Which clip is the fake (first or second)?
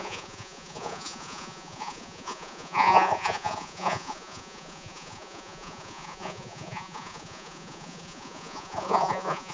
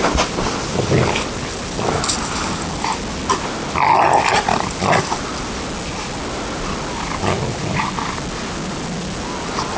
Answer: first